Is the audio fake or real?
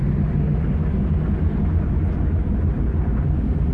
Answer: real